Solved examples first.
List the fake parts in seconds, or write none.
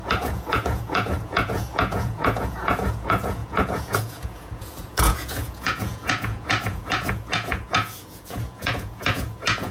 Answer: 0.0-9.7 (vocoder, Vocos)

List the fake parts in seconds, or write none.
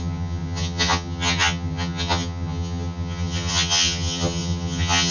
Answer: 0.0-5.1 (vocoder, HiFi-GAN)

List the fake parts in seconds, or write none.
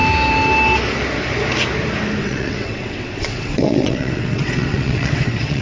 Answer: 2.2-5.6 (vocoder, WaveNeXt)